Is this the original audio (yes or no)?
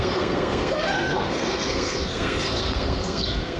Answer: no